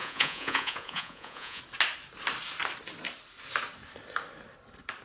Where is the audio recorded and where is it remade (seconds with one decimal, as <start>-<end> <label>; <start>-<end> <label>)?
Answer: 0.0-1.6 remade; 1.6-5.0 recorded